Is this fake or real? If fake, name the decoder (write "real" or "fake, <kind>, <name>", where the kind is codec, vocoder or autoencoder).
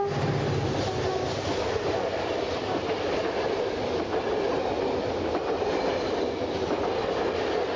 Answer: real